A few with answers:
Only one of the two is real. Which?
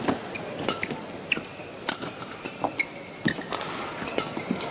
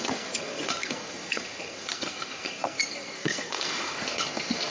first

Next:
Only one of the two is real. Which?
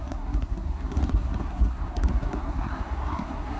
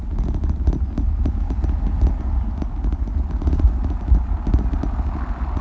second